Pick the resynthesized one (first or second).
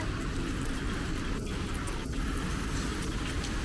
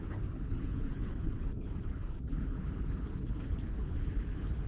second